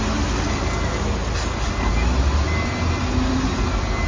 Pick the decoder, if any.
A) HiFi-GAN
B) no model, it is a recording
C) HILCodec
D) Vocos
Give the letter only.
B